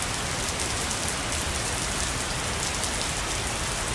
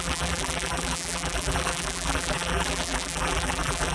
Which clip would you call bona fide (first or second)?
first